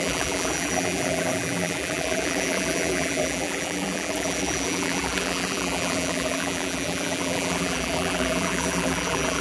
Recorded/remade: remade